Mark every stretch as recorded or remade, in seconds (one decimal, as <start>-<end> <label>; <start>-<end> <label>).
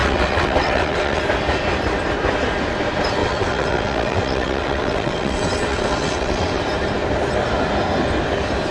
0.0-1.2 remade; 1.2-3.2 recorded; 3.2-6.6 remade; 6.6-8.7 recorded